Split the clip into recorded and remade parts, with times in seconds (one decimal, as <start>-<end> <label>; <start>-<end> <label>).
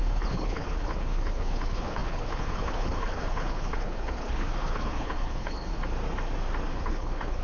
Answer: 0.0-5.7 remade; 5.7-6.7 recorded; 6.7-7.4 remade